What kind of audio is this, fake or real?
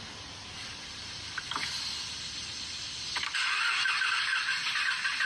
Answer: real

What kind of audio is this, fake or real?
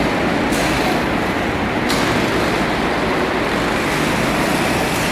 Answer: real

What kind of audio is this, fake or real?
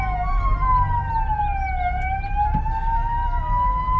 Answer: real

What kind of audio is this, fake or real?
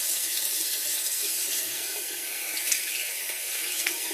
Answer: fake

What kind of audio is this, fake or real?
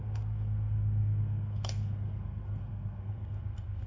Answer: fake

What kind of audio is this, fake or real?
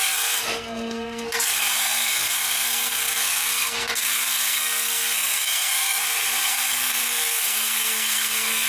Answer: fake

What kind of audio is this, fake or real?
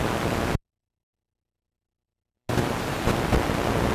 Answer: real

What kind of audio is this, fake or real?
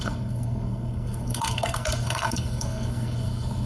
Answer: fake